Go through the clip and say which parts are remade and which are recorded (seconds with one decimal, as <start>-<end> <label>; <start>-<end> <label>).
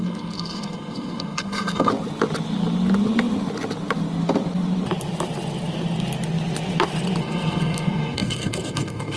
0.0-1.9 remade; 1.9-7.2 recorded; 7.2-9.2 remade